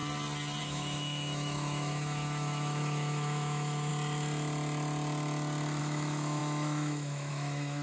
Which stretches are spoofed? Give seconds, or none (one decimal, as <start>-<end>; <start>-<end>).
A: 0.6-3.9; 5.8-7.8